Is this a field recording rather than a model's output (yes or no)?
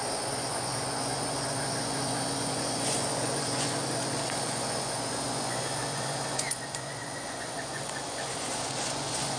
no